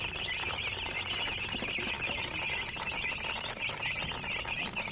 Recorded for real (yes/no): yes